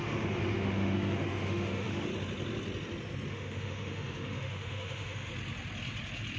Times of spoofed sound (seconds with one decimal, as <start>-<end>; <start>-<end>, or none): 0.0-2.1; 3.3-5.3